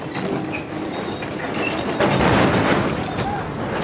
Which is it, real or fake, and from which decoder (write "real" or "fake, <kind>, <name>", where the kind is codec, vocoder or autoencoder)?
real